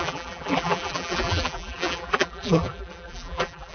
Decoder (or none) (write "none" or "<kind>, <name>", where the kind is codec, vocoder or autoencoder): vocoder, BigVGAN v2